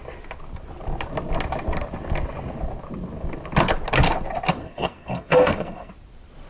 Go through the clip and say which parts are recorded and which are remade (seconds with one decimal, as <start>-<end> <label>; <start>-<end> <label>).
0.0-4.6 recorded; 4.6-5.9 remade; 5.9-6.5 recorded